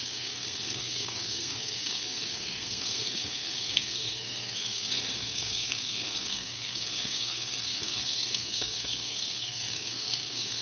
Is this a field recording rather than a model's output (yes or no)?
no